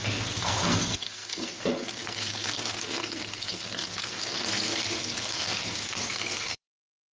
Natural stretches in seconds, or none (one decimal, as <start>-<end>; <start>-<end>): none